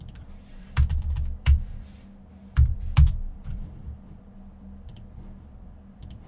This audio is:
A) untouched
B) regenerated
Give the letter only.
B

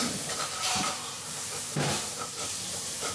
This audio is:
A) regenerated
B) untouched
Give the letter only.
A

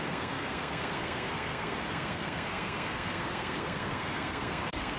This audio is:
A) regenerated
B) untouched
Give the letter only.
A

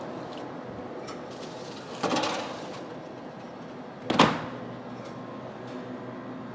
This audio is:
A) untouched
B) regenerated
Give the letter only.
A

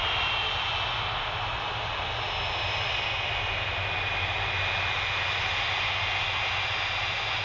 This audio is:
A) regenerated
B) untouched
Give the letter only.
B